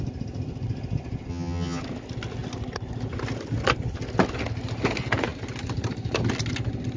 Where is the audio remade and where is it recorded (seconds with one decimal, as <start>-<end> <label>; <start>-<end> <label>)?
0.0-1.3 recorded; 1.3-1.8 remade; 1.8-7.0 recorded